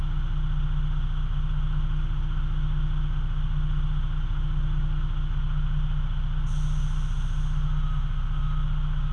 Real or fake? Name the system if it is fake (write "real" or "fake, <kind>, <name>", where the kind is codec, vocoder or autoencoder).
real